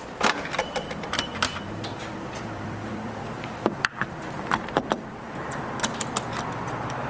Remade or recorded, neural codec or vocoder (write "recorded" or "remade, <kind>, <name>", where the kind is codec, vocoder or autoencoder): remade, vocoder, BigVGAN v2